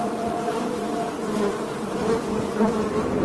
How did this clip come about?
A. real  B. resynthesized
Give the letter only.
B